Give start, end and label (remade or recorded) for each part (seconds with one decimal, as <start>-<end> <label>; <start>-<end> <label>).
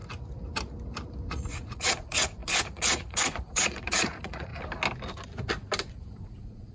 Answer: 0.0-1.3 recorded; 1.3-4.5 remade; 4.5-5.9 recorded; 5.9-6.7 remade